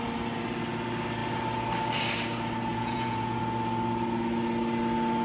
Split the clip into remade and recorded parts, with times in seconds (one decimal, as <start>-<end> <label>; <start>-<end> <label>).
0.0-2.7 recorded; 2.7-3.4 remade; 3.4-5.2 recorded